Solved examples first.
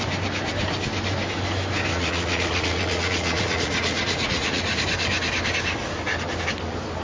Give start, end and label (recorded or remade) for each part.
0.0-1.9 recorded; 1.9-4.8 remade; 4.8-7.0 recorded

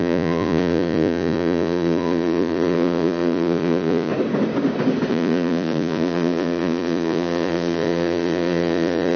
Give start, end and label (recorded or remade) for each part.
0.0-4.1 remade; 4.1-5.1 recorded; 5.1-9.2 remade

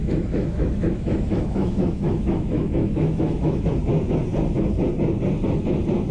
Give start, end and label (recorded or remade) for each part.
0.0-3.7 remade; 3.7-6.1 recorded